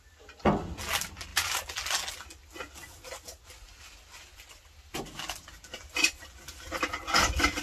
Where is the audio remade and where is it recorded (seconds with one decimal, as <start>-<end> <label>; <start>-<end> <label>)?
0.0-7.6 recorded